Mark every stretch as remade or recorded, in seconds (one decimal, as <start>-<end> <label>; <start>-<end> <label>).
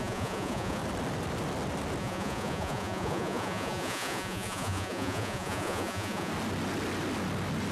0.0-0.8 remade; 0.8-2.0 recorded; 2.0-6.3 remade; 6.3-7.7 recorded